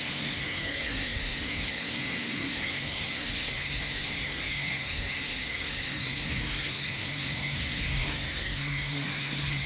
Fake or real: fake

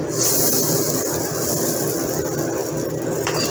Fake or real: real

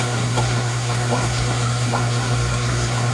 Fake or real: fake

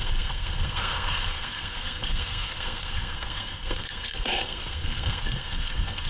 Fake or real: fake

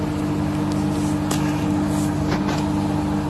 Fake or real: real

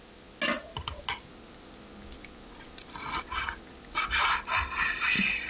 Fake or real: real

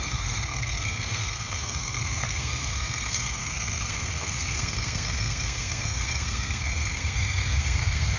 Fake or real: fake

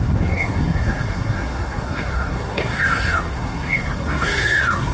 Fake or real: fake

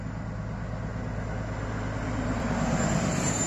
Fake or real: real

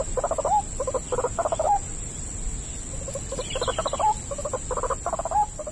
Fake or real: real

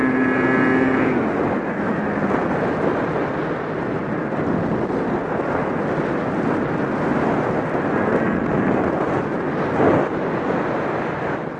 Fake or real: real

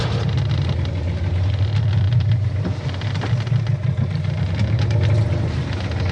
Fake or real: real